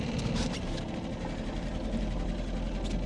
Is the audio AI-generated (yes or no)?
no